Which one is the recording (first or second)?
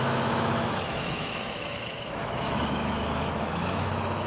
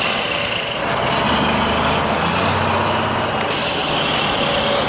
second